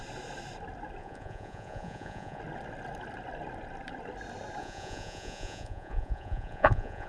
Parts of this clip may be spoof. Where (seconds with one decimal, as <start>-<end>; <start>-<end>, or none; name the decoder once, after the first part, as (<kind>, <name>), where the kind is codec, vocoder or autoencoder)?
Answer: 1.0-2.4 (vocoder, Vocos); 4.6-7.1